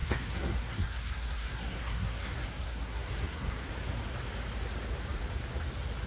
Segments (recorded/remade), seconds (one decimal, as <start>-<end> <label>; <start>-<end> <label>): 0.0-3.7 remade; 3.7-6.1 recorded